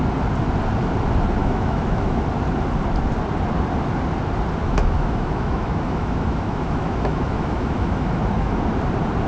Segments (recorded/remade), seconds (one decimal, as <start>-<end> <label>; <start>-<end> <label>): 0.0-1.4 recorded; 1.4-2.2 remade; 2.2-4.6 recorded; 4.6-8.6 remade; 8.6-9.3 recorded